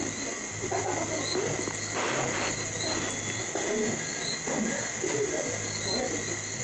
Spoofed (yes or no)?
no